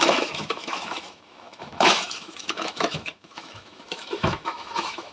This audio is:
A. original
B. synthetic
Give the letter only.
B